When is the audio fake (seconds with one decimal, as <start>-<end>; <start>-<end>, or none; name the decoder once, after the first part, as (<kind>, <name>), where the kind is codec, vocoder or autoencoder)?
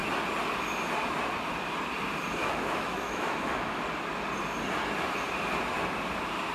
2.4-3.8 (autoencoder, DAC-VAE)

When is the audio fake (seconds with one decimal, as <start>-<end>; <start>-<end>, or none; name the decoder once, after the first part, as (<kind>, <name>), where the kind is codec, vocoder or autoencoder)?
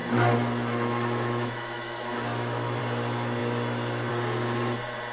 0.0-2.8 (autoencoder, DAC-VAE)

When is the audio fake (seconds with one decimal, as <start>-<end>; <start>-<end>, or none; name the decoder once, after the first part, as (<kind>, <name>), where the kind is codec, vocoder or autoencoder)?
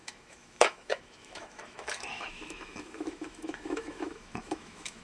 0.0-5.0 (autoencoder, DAC-VAE)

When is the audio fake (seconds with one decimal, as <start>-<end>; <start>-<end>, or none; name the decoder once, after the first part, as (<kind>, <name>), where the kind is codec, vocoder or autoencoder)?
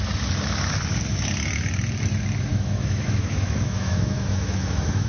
2.5-5.1 (autoencoder, DAC-VAE)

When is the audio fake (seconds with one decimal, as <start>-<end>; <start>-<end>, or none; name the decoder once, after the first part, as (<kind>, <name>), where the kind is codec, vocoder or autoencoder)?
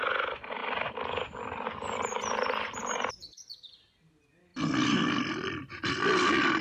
none